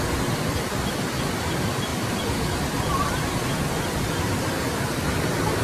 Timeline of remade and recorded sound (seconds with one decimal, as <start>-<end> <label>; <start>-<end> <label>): 0.0-1.9 recorded; 1.9-4.8 remade; 4.8-5.6 recorded